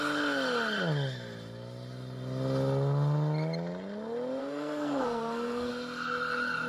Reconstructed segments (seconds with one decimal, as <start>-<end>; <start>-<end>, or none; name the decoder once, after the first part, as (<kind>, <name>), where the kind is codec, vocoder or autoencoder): 4.4-5.7 (codec, SNAC)